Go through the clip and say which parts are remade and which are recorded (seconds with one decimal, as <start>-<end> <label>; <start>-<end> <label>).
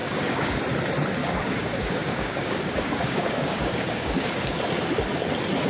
0.0-0.6 remade; 0.6-1.2 recorded; 1.2-4.6 remade; 4.6-5.7 recorded